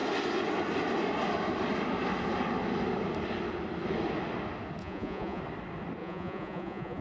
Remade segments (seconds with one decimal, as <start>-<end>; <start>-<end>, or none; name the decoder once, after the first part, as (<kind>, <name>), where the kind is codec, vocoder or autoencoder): 4.8-5.4 (vocoder, Vocos); 6.0-7.0